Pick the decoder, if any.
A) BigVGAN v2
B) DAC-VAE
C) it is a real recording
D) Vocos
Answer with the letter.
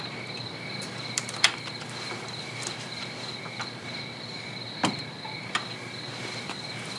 A